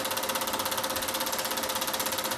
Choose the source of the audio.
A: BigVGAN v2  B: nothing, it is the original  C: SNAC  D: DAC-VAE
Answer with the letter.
B